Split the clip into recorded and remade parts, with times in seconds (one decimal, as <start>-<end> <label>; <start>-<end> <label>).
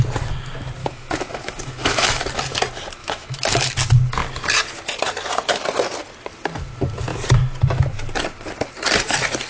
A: 0.0-0.8 recorded; 0.8-2.2 remade; 2.2-3.0 recorded; 3.0-3.7 remade; 3.7-9.5 recorded